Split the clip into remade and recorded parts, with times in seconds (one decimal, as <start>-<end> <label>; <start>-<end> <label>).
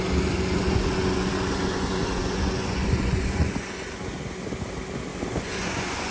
0.0-0.5 recorded; 0.5-3.7 remade; 3.7-5.1 recorded; 5.1-6.1 remade